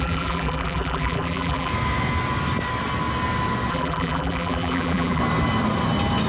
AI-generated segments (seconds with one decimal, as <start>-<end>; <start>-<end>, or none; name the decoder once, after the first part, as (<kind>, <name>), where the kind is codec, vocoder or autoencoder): 0.0-1.7 (vocoder, BigVGAN v2); 3.7-5.2